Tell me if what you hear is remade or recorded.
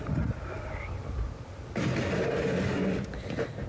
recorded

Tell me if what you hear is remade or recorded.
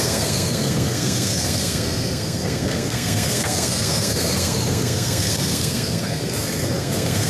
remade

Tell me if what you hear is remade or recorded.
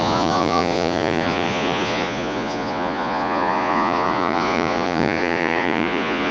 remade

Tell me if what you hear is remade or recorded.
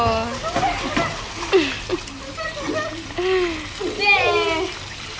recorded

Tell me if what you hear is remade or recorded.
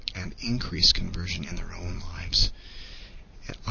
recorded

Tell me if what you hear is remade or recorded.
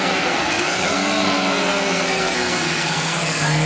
remade